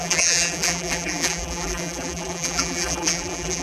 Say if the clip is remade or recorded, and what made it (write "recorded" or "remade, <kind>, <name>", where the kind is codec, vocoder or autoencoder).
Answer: remade, vocoder, BigVGAN v2